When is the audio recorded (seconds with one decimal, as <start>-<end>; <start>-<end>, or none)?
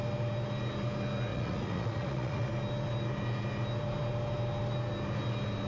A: 0.0-1.3; 2.5-5.7